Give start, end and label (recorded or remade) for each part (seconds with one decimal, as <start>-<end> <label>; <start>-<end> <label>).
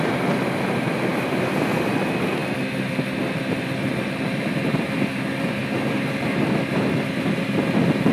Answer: 0.0-8.1 recorded